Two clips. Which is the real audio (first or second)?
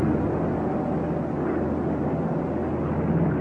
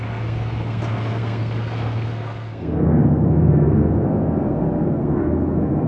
first